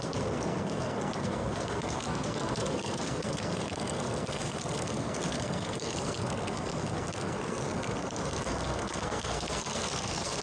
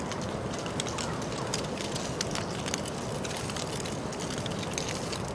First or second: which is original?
second